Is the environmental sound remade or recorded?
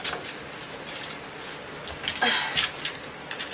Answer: recorded